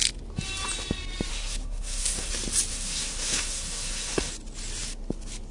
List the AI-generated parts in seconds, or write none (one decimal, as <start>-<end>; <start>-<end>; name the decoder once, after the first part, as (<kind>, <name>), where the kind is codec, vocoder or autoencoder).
1.3-2.3 (codec, SNAC); 2.7-4.3